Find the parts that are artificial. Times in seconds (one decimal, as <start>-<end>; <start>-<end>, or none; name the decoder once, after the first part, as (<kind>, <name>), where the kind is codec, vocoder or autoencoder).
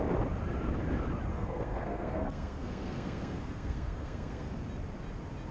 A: 1.3-4.5 (codec, SNAC)